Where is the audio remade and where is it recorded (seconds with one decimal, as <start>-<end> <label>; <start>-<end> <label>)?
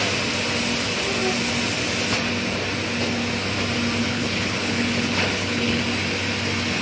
0.0-4.0 recorded; 4.0-5.8 remade; 5.8-6.8 recorded